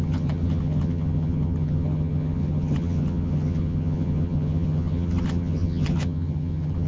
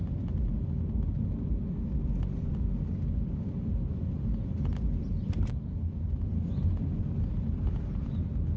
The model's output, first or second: first